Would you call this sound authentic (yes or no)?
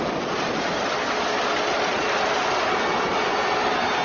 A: yes